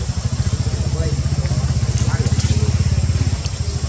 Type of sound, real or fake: real